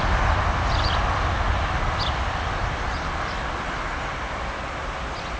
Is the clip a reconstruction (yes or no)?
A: no